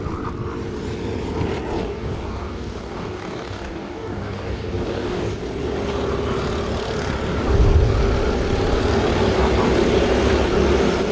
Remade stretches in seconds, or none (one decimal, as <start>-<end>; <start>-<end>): 1.8-5.4